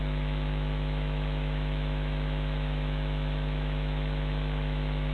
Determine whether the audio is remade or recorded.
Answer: remade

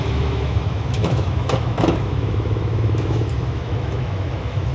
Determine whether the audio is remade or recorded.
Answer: remade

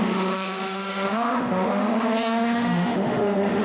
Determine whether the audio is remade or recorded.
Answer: remade